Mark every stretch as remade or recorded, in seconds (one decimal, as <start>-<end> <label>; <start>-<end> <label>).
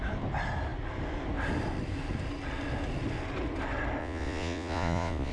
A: 0.0-4.0 recorded; 4.0-5.3 remade